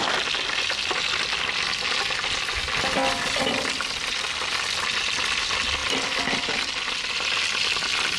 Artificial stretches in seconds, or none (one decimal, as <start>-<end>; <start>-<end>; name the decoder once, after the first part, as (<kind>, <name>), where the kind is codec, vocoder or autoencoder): none